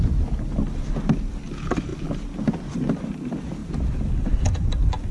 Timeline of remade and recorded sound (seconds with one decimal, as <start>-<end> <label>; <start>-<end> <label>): 0.0-5.1 recorded